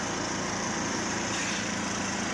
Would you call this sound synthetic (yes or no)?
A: no